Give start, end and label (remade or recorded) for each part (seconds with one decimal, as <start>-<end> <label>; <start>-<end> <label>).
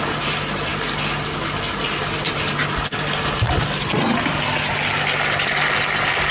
0.0-6.3 recorded